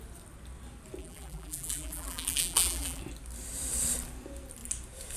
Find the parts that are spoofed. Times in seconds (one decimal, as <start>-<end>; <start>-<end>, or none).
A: 1.0-3.0